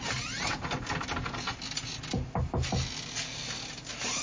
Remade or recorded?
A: recorded